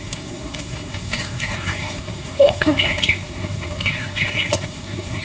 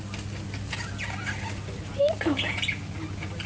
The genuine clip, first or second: second